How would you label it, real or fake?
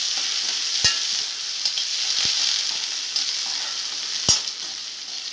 real